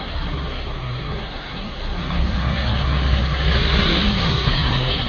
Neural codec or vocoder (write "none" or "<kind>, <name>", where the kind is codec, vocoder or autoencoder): codec, SNAC